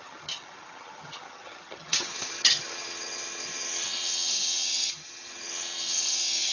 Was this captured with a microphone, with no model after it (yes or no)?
no